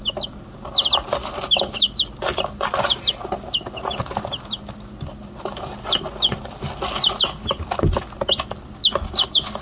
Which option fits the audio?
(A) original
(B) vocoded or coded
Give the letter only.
A